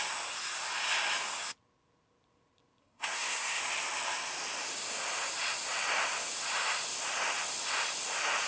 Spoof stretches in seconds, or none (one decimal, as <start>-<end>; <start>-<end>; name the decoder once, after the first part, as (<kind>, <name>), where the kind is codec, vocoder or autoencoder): 2.8-3.6 (codec, SNAC)